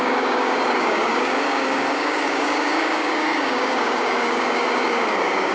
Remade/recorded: remade